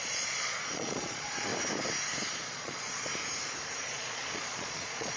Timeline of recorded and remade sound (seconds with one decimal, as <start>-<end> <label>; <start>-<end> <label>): 0.0-1.5 remade; 1.5-2.3 recorded; 2.3-3.1 remade; 3.1-3.8 recorded; 3.8-5.2 remade